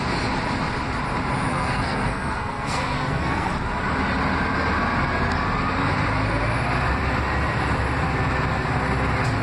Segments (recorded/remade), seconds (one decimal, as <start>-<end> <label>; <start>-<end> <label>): 0.0-1.5 recorded; 1.5-3.5 remade; 3.5-9.4 recorded